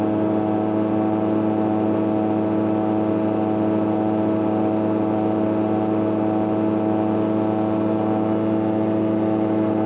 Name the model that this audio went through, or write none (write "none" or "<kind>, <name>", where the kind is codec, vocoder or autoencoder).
none